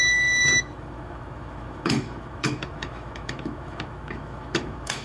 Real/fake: fake